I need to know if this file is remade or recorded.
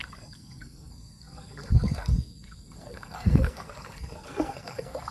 remade